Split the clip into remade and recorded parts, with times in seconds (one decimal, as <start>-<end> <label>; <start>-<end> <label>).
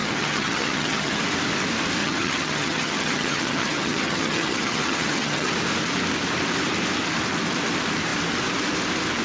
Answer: 0.0-1.2 remade; 1.2-2.0 recorded; 2.0-5.5 remade; 5.5-9.2 recorded